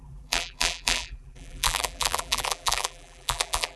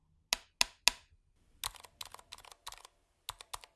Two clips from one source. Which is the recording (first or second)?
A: second